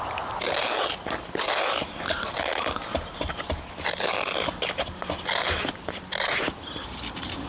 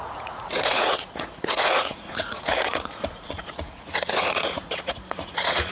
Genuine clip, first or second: first